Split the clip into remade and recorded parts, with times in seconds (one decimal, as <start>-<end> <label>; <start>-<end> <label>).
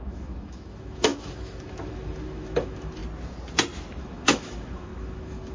0.0-3.0 remade; 3.0-4.0 recorded; 4.0-5.5 remade